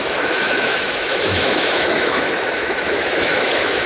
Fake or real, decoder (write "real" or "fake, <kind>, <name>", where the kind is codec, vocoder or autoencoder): fake, autoencoder, DAC-VAE